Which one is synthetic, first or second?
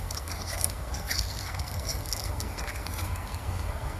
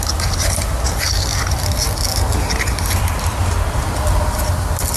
first